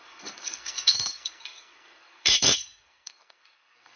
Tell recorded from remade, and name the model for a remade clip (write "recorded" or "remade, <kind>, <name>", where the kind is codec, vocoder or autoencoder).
remade, codec, SNAC